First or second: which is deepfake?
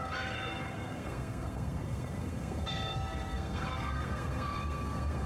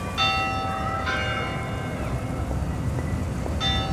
first